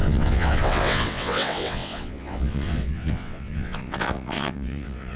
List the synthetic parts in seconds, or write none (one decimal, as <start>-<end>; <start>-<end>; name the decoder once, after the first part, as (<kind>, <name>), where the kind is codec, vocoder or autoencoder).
0.0-5.2 (vocoder, WaveNeXt)